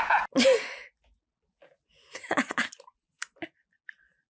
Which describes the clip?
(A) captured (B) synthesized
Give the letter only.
A